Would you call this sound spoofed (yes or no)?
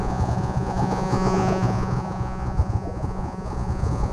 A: yes